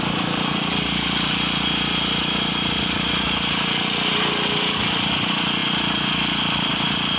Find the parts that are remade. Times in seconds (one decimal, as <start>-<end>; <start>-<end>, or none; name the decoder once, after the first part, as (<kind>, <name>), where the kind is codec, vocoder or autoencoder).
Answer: none